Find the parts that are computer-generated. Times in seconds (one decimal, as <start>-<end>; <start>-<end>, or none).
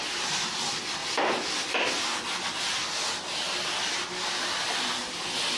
1.0-2.5